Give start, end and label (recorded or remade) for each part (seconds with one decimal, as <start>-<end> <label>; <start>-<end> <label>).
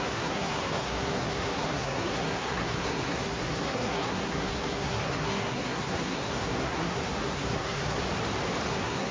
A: 0.0-8.0 remade; 8.0-8.7 recorded; 8.7-9.1 remade